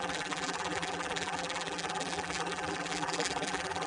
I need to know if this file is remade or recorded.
remade